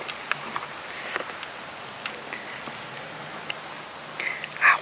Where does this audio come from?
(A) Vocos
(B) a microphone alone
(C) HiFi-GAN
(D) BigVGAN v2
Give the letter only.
B